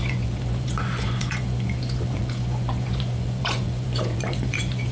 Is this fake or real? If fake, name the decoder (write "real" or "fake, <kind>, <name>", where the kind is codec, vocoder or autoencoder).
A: fake, vocoder, Vocos